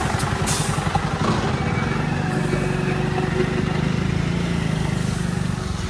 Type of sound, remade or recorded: recorded